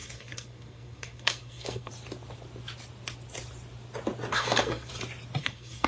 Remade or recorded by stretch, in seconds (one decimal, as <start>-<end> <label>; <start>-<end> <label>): 0.0-1.9 remade; 1.9-4.3 recorded; 4.3-4.9 remade; 4.9-5.4 recorded; 5.4-5.9 remade